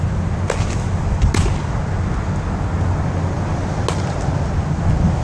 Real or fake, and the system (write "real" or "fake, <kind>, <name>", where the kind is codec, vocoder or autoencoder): real